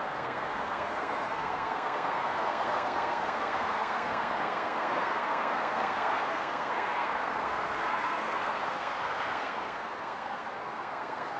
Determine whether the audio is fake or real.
fake